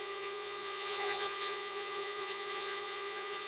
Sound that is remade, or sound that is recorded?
remade